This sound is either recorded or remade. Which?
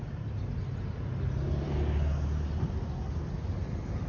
recorded